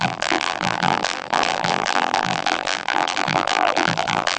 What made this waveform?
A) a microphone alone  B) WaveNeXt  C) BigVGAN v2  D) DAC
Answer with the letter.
C